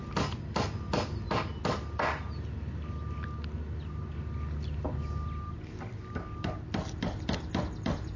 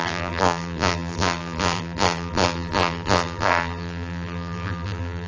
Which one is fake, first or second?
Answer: second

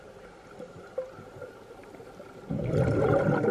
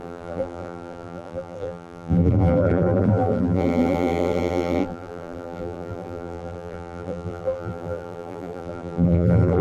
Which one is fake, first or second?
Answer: second